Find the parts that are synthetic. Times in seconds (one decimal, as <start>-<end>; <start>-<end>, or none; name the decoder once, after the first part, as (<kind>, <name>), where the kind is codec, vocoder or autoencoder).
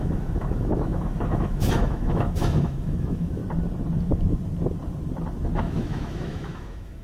0.0-3.4 (autoencoder, DAC-VAE); 5.6-7.0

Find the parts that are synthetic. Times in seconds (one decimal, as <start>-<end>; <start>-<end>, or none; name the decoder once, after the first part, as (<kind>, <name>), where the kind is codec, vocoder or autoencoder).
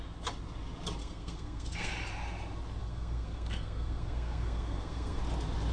1.0-1.9 (codec, SNAC); 2.8-5.2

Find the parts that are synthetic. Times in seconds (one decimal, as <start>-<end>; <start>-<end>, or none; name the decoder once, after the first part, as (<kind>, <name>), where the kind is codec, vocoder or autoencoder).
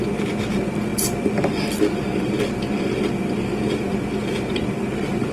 none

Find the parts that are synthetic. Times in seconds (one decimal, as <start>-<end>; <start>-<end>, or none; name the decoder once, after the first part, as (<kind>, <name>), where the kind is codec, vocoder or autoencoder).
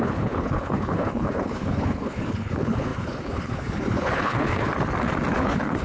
0.0-4.7 (codec, HILCodec); 5.3-5.8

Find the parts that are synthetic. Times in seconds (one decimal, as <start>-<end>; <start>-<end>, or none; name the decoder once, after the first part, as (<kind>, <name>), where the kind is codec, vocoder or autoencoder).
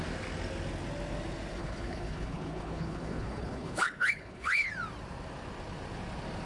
1.6-4.7 (codec, HILCodec)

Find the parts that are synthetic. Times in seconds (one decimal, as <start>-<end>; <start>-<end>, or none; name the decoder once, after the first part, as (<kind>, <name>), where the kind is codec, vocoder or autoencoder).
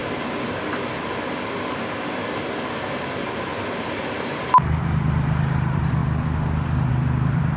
3.0-6.0 (vocoder, BigVGAN v2); 6.9-7.6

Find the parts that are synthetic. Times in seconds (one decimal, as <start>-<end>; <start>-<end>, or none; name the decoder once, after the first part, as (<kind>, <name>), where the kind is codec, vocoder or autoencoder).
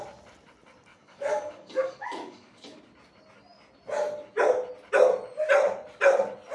0.9-2.8 (codec, DAC)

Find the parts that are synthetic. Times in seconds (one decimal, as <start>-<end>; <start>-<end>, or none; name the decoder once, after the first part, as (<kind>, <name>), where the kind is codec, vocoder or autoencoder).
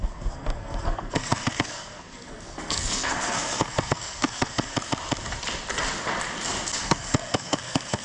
0.0-4.7 (codec, SNAC); 6.8-8.0